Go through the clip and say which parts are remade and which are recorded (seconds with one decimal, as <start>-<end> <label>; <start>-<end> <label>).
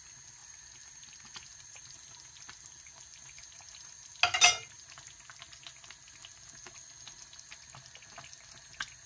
0.0-9.1 recorded